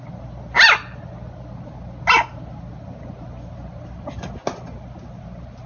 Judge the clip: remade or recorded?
recorded